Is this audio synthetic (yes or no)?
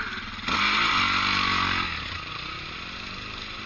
no